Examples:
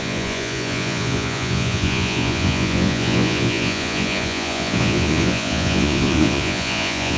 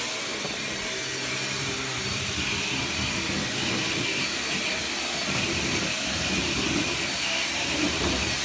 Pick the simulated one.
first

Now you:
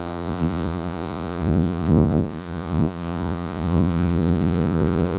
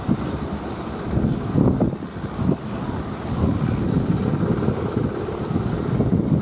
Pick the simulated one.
first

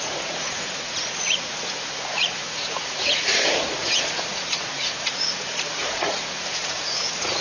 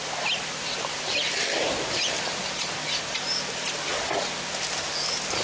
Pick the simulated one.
first